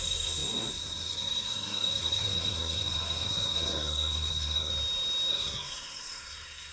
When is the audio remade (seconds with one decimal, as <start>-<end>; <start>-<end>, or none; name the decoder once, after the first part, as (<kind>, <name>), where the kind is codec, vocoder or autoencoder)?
0.0-4.7 (codec, SNAC); 5.3-6.7